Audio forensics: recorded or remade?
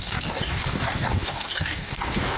remade